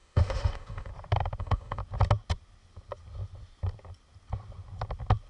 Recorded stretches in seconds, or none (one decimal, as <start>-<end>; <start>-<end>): 0.9-1.4; 1.8-5.3